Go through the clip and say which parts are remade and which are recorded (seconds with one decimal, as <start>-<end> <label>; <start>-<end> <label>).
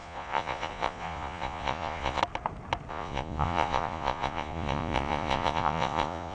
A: 0.0-2.2 remade; 2.2-2.9 recorded; 2.9-6.3 remade